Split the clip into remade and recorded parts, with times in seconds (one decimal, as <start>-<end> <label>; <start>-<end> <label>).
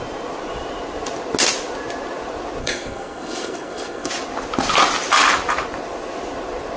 0.0-2.6 recorded; 2.6-4.1 remade; 4.1-6.8 recorded